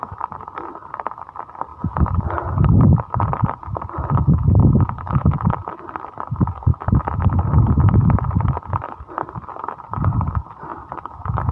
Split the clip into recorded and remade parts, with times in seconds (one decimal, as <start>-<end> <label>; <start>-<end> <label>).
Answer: 0.0-1.7 remade; 1.7-2.6 recorded; 2.6-6.7 remade; 6.7-9.5 recorded; 9.5-11.5 remade